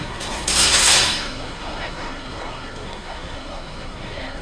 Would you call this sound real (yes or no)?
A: no